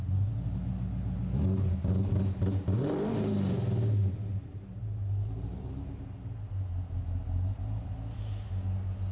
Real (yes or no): yes